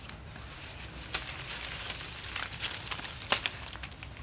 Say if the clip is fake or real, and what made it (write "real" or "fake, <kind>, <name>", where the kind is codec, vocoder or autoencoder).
real